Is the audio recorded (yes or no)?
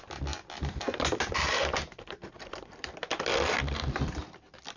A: no